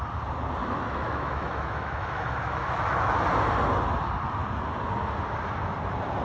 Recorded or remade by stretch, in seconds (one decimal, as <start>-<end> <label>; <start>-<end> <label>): 0.0-0.6 recorded; 0.6-3.1 remade; 3.1-6.2 recorded

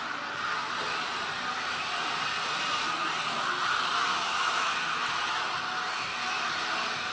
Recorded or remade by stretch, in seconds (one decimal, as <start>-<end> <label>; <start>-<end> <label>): 0.0-4.1 recorded; 4.1-5.4 remade; 5.4-7.1 recorded